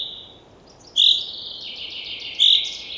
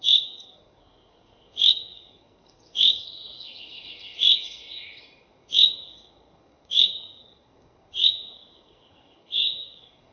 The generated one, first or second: second